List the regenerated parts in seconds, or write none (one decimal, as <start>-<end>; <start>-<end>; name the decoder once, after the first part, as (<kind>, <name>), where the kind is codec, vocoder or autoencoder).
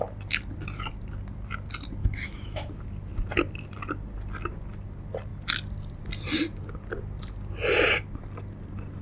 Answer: 2.0-2.7 (autoencoder, DAC-VAE)